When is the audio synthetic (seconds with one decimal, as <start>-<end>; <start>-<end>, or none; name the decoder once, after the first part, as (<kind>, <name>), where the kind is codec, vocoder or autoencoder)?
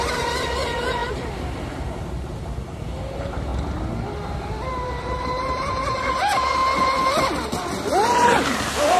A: 0.0-3.5 (vocoder, BigVGAN v2); 4.9-6.6; 7.7-9.0